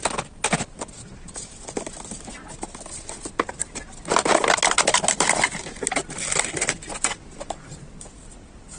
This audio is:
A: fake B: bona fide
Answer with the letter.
B